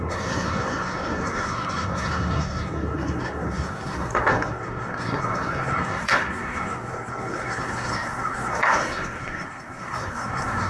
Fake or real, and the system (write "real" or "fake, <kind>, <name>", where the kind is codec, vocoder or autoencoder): fake, codec, SNAC